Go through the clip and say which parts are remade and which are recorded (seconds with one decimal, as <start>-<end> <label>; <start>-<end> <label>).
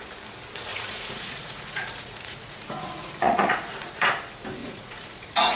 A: 0.0-0.7 recorded; 0.7-4.1 remade; 4.1-4.6 recorded; 4.6-5.6 remade